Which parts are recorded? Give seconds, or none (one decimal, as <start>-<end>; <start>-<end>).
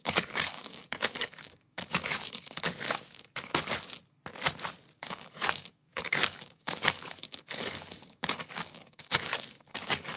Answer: 3.5-5.0